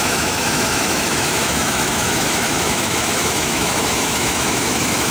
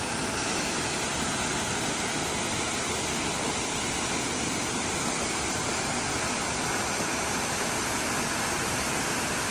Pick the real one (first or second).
second